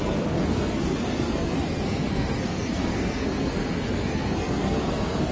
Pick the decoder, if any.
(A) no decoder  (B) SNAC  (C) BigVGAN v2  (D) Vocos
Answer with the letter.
B